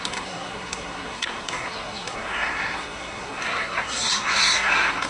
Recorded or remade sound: remade